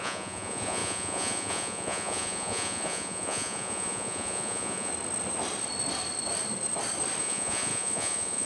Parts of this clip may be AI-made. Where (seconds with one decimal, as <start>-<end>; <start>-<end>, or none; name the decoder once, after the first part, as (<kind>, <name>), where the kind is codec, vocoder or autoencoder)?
0.0-4.9 (vocoder, Vocos); 7.2-8.5